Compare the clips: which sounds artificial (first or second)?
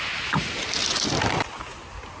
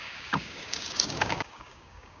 second